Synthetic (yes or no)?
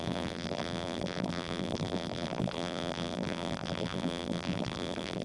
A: yes